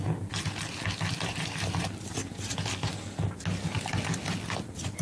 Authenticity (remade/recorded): recorded